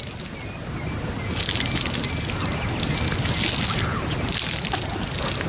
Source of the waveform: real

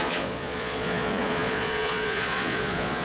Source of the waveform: fake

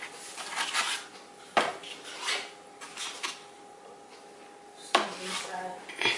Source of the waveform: real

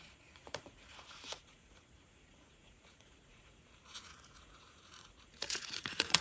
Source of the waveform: fake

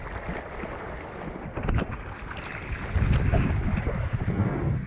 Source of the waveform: real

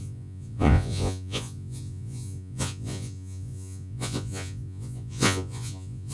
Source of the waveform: fake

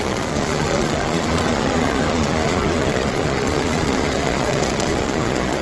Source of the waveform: fake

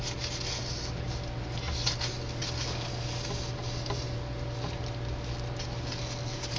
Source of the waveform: real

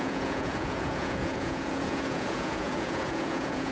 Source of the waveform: fake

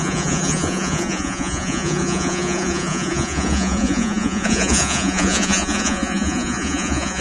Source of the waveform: fake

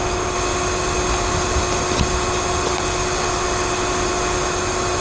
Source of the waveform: real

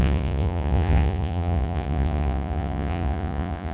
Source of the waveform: fake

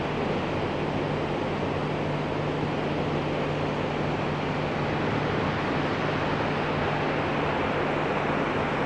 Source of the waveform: real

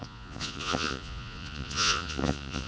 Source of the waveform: fake